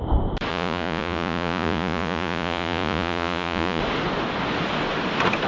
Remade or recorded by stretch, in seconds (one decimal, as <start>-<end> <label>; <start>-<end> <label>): 0.0-0.5 recorded; 0.5-3.8 remade; 3.8-5.5 recorded